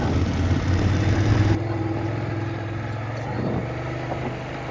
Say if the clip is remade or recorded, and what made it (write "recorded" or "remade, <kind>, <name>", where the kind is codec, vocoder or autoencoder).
recorded